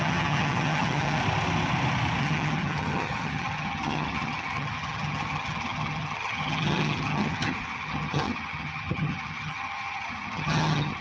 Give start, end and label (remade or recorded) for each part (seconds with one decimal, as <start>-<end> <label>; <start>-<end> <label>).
0.0-1.2 remade; 1.2-2.2 recorded; 2.2-11.0 remade